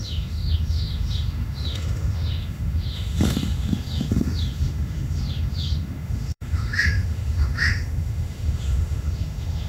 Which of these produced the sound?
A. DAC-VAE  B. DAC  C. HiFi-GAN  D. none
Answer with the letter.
A